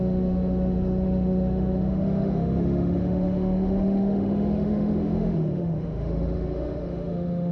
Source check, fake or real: fake